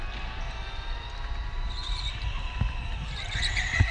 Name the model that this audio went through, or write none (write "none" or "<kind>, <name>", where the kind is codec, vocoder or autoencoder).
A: none